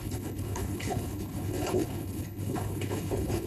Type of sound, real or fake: fake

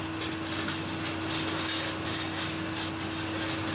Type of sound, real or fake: real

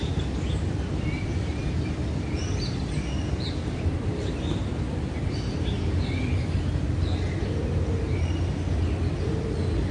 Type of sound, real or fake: real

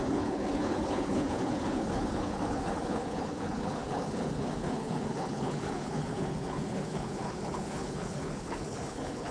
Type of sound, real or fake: fake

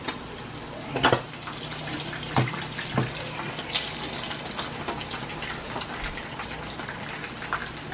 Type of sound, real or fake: real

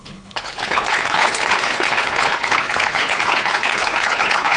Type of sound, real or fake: fake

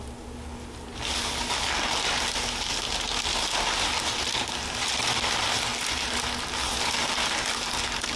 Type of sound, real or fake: real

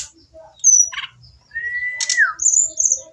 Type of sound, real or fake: real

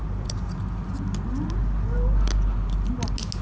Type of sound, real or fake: real